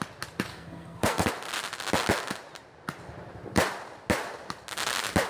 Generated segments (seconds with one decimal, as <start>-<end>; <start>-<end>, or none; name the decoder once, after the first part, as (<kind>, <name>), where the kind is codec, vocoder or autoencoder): 0.5-1.3 (codec, SNAC)